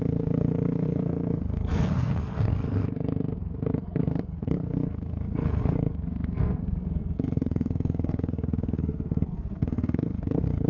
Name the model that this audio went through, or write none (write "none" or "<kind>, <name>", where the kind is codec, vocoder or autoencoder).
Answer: codec, SNAC